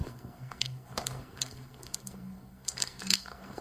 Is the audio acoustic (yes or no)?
no